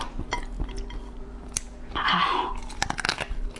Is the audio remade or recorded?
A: recorded